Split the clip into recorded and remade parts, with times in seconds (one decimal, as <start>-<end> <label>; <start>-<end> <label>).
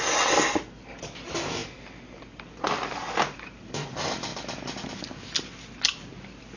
0.0-6.6 recorded